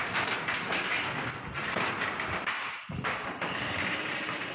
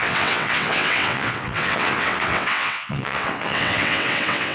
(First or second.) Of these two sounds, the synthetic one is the second